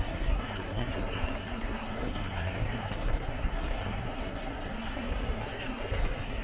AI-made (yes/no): yes